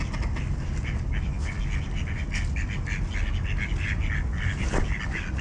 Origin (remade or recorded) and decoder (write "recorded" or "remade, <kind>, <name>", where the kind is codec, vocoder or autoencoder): recorded